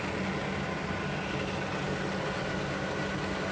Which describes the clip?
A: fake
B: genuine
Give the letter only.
B